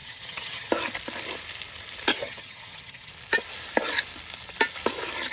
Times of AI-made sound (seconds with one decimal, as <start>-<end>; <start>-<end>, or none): 0.0-0.7; 2.1-3.1